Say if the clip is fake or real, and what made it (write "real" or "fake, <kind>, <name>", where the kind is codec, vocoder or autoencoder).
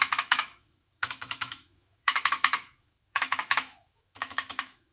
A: fake, autoencoder, DAC-VAE